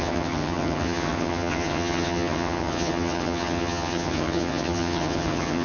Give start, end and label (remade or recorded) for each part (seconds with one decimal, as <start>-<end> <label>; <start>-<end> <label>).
0.0-5.6 remade